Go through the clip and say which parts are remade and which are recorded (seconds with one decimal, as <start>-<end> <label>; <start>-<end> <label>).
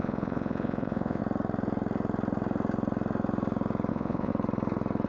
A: 0.0-1.2 remade; 1.2-3.9 recorded; 3.9-4.3 remade; 4.3-5.1 recorded